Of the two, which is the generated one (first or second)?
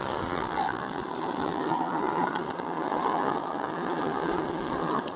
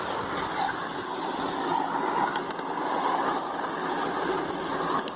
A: first